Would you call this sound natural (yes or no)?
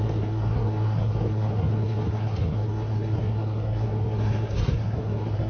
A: no